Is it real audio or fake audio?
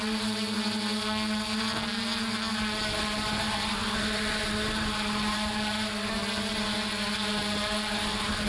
real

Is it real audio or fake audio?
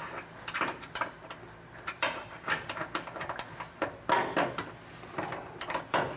real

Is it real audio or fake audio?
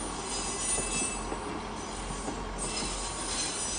real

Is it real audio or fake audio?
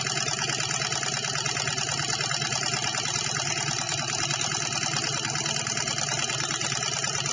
real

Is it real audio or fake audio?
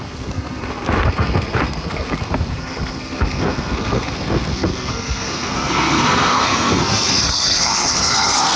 fake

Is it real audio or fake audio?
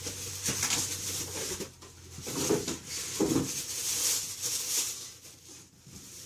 real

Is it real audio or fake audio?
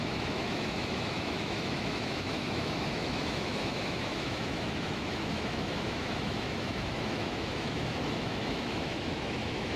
fake